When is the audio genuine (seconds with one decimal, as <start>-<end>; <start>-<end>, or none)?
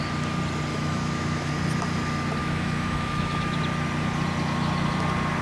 0.0-0.7; 1.5-2.4; 3.6-5.4